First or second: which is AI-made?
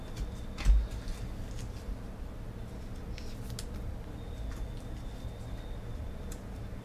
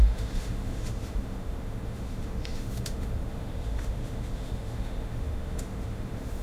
second